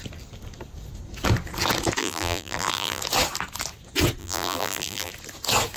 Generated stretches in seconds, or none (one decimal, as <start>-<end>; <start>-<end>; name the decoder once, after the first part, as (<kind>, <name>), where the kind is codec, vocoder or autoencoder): 2.0-3.0 (vocoder, BigVGAN v2); 4.2-5.1